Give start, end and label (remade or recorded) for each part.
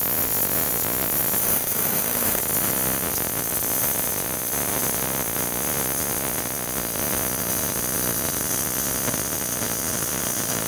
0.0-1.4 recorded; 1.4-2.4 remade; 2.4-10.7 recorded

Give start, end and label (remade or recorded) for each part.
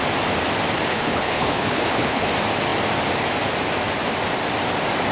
0.0-0.9 recorded; 0.9-2.3 remade; 2.3-5.1 recorded